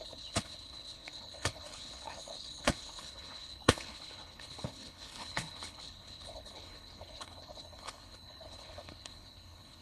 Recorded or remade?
remade